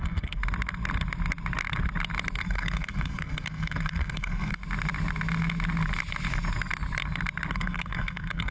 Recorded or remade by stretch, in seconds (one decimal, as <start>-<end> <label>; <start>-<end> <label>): 0.0-0.4 remade; 0.4-2.4 recorded; 2.4-4.6 remade; 4.6-7.5 recorded; 7.5-8.5 remade